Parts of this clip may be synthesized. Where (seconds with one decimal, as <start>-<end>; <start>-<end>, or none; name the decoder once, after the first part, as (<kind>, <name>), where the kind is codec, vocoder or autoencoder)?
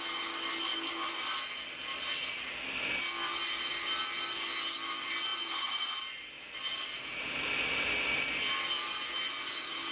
none